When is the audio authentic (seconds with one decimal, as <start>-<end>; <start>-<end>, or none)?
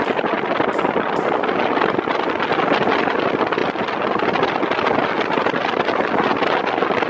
0.0-7.1